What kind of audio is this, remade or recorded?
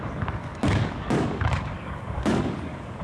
remade